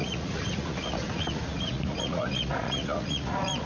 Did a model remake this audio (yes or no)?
yes